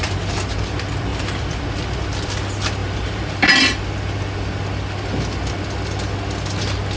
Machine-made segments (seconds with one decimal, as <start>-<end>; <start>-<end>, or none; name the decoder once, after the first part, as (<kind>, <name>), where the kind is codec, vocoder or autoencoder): 1.1-1.6 (vocoder, BigVGAN v2); 2.8-3.3